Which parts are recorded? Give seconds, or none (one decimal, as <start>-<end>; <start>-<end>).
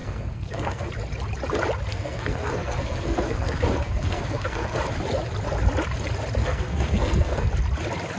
0.9-1.9; 4.8-6.4; 7.5-8.2